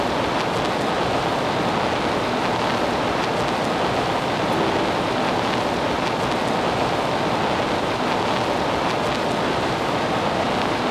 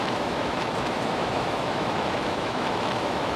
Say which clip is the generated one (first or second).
second